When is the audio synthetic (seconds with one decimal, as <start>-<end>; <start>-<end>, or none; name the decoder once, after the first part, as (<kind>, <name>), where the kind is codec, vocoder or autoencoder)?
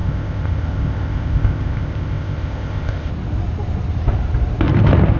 0.0-3.1 (codec, ZipCodec)